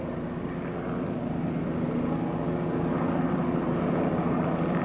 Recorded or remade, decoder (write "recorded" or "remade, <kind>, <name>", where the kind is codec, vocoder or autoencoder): recorded